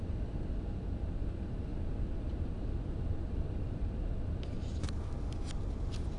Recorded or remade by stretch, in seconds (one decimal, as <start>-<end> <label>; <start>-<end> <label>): 0.0-1.7 recorded; 1.7-4.7 remade; 4.7-6.2 recorded